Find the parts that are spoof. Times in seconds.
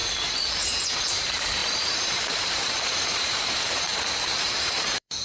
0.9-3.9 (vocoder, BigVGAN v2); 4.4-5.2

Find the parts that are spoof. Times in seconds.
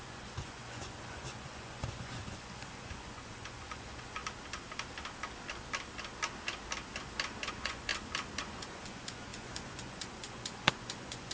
0.0-4.2 (vocoder, Vocos); 7.5-7.9; 8.4-11.3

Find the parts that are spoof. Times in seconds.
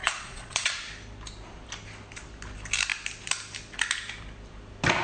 0.0-0.7 (vocoder, Vocos)